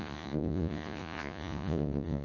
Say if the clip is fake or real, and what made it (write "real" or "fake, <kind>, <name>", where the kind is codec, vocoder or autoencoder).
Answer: fake, vocoder, Vocos